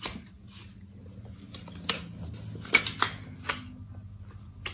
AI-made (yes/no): no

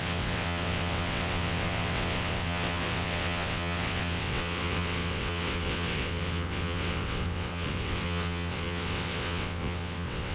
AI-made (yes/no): yes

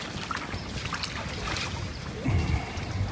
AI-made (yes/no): no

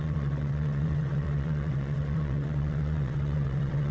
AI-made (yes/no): yes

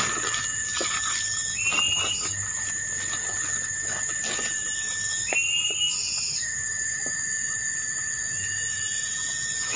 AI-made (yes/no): no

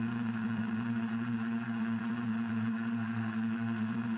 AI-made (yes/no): yes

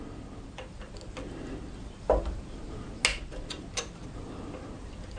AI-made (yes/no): no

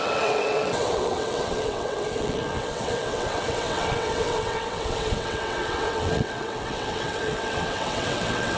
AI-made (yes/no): yes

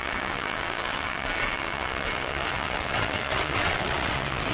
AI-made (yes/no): yes